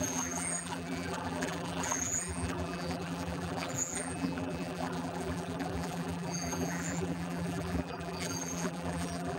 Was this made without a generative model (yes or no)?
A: no